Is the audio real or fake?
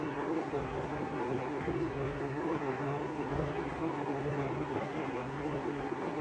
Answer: fake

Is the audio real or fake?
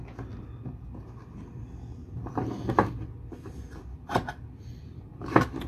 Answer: real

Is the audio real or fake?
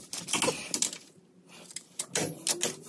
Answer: real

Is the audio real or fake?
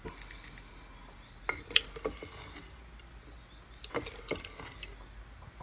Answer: real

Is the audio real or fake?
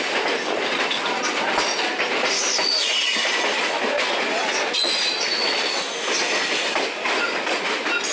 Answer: real